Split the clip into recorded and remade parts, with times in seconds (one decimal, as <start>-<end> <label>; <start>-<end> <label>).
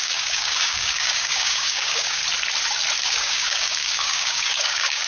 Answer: 0.0-2.2 remade; 2.2-3.0 recorded; 3.0-5.1 remade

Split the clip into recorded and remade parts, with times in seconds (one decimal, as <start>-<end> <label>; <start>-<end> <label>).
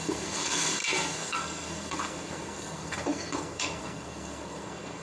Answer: 0.0-5.0 remade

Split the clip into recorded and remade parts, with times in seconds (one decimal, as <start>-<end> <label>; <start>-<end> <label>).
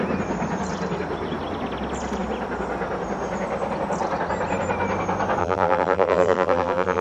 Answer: 0.0-5.4 recorded; 5.4-7.0 remade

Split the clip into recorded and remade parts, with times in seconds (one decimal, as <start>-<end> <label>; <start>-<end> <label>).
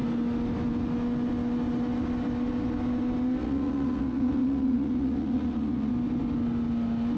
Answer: 0.0-3.4 recorded; 3.4-5.9 remade; 5.9-7.2 recorded